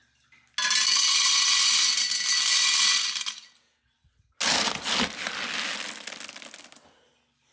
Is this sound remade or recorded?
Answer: recorded